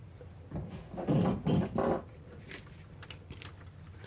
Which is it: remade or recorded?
remade